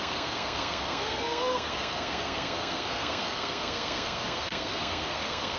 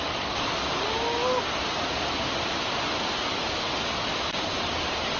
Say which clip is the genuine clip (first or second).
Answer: second